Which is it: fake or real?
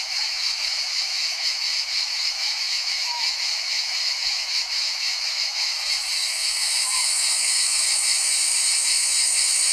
fake